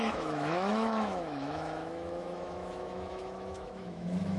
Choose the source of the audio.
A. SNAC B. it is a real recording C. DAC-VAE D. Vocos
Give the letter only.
C